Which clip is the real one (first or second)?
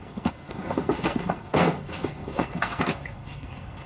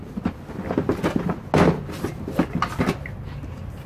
second